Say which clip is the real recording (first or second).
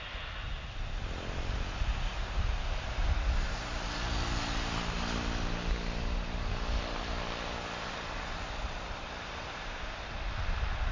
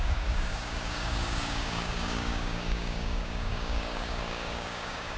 first